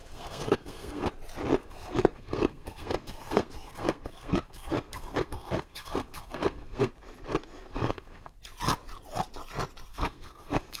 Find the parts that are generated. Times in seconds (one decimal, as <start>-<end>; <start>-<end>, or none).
0.0-1.1; 1.6-6.9; 7.7-8.3; 9.9-10.8